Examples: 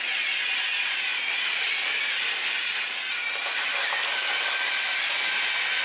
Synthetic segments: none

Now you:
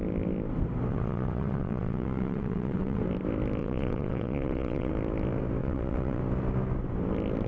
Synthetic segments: 0.9-3.0 (vocoder, WaveNeXt); 3.6-4.9; 5.6-6.2